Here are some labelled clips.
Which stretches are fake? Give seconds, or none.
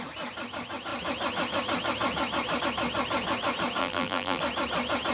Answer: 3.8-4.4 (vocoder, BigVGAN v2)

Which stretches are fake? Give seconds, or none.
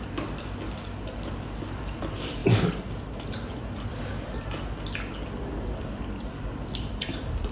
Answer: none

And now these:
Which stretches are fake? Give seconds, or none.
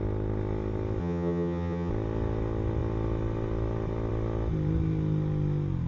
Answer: 1.0-1.9 (vocoder, HiFi-GAN)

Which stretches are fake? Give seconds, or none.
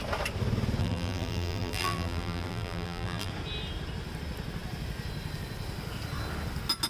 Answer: 0.8-3.3 (vocoder, BigVGAN v2)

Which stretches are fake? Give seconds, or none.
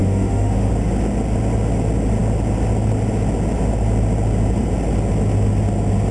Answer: 0.0-0.7 (autoencoder, DAC-VAE)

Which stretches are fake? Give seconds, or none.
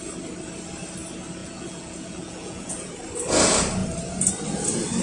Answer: 1.4-2.9 (vocoder, Vocos)